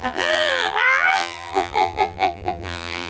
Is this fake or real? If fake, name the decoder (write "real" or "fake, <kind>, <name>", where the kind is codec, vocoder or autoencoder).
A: fake, vocoder, BigVGAN v2